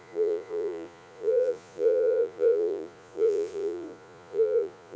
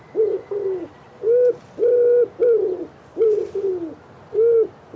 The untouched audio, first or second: second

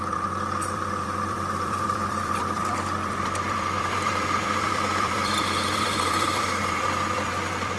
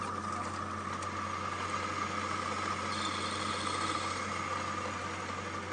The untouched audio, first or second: second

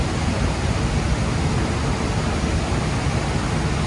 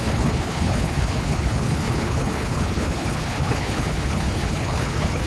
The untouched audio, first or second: first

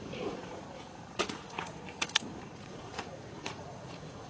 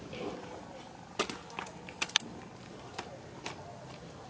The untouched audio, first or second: second